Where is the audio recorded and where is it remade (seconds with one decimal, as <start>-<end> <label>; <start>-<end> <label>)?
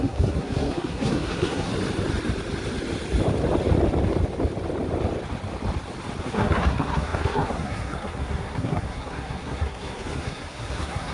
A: 0.0-1.7 remade; 1.7-6.2 recorded; 6.2-11.1 remade